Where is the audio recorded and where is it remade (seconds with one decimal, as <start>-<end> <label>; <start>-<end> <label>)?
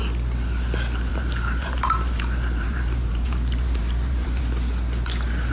0.0-1.1 recorded; 1.1-4.4 remade; 4.4-5.5 recorded